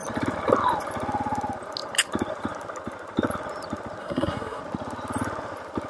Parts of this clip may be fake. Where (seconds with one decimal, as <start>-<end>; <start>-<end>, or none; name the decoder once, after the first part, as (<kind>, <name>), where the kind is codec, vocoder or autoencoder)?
4.0-4.6 (codec, SNAC)